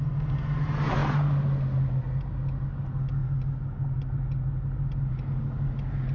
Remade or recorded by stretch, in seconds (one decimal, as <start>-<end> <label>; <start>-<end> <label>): 0.0-6.1 recorded